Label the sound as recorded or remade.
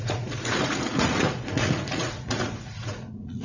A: remade